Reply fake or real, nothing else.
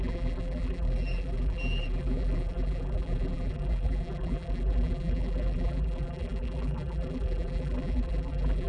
fake